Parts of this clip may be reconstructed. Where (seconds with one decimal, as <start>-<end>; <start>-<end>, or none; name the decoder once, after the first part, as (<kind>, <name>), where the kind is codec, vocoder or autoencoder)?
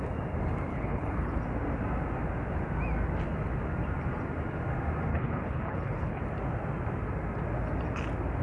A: 0.7-1.4 (codec, HILCodec); 5.1-6.2